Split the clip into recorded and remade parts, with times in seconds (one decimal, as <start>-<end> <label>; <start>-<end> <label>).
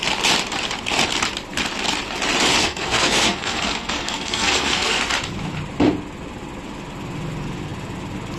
0.0-2.6 recorded; 2.6-5.0 remade; 5.0-8.4 recorded